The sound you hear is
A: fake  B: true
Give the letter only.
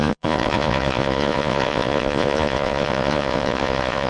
A